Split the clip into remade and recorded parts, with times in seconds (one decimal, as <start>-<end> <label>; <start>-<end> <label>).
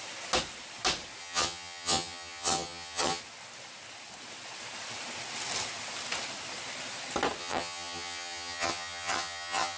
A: 0.0-1.2 recorded; 1.2-3.2 remade; 3.2-7.4 recorded; 7.4-9.8 remade